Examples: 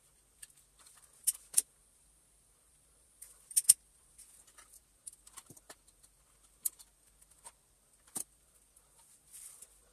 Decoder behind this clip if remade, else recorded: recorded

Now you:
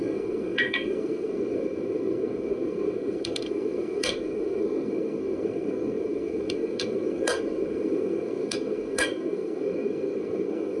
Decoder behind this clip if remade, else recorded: remade, codec, SNAC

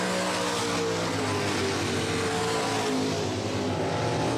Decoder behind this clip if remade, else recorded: recorded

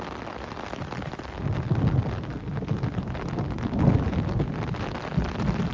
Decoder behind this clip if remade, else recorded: recorded